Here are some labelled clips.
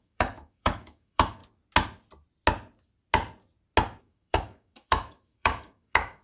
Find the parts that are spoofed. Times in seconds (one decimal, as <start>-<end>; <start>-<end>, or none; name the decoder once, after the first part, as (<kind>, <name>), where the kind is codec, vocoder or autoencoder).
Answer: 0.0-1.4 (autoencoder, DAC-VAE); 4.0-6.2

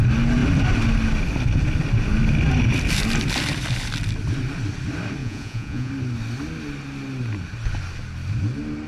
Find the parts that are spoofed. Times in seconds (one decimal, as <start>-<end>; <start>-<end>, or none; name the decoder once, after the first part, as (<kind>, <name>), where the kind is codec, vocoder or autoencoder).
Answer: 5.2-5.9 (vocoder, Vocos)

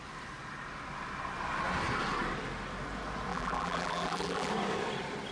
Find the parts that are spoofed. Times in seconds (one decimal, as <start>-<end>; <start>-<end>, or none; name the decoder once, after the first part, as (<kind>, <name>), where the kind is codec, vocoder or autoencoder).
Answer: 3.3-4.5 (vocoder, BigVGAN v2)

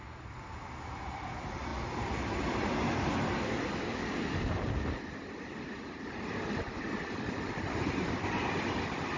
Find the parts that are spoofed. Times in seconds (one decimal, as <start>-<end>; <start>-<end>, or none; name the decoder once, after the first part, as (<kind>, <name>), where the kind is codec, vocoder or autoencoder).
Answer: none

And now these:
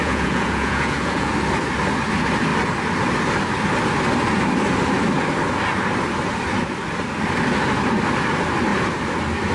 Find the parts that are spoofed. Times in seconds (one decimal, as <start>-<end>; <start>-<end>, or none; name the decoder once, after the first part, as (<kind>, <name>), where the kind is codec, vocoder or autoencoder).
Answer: 0.0-1.3 (vocoder, Vocos)